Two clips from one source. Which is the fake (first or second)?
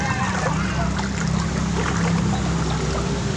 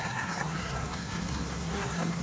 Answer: second